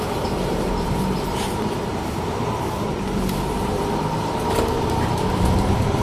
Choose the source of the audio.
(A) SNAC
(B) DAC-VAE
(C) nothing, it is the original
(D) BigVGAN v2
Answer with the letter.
D